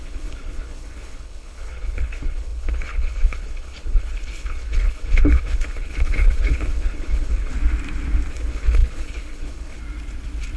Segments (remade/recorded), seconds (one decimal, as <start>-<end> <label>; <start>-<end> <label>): 0.0-7.5 remade; 7.5-8.3 recorded; 8.3-9.8 remade; 9.8-10.6 recorded